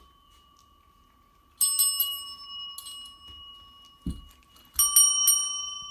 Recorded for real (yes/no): yes